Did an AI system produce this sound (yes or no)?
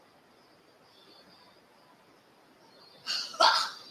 no